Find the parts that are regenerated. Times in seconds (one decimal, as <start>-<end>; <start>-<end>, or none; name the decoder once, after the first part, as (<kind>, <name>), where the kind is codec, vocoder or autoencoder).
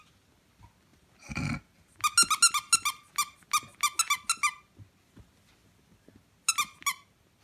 none